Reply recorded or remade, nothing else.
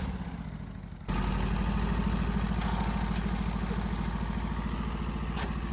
recorded